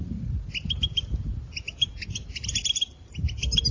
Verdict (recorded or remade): recorded